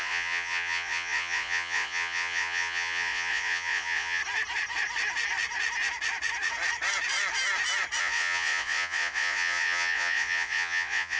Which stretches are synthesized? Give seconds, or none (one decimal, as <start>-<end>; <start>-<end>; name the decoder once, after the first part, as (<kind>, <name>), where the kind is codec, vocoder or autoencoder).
0.0-4.2 (vocoder, Vocos); 8.0-11.2